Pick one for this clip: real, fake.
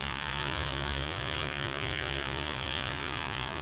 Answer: fake